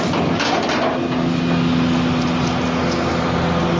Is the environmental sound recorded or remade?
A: recorded